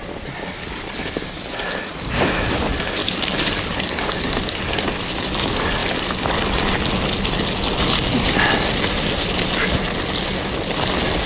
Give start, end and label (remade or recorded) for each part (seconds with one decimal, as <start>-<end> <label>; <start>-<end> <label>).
0.0-0.6 recorded; 0.6-1.1 remade; 1.1-3.0 recorded; 3.0-4.6 remade; 4.6-11.3 recorded